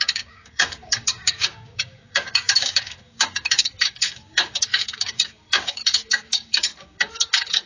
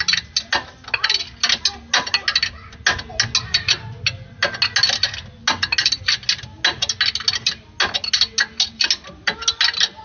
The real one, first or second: second